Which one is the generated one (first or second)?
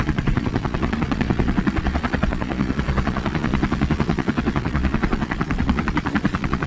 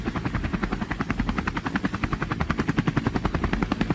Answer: first